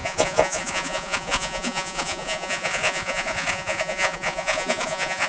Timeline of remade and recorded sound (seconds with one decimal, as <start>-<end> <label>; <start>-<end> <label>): 0.0-5.3 remade